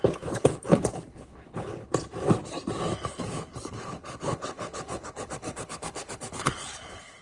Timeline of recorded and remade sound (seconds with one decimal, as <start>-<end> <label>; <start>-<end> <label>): 0.0-1.9 remade; 1.9-3.1 recorded; 3.1-7.2 remade